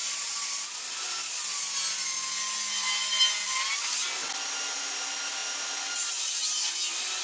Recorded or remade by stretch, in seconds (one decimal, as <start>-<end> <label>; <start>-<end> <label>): 0.0-0.6 remade; 0.6-7.2 recorded